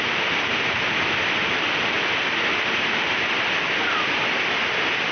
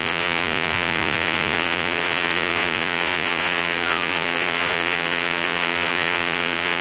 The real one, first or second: first